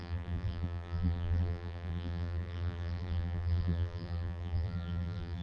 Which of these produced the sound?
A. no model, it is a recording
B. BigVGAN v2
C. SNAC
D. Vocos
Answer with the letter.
B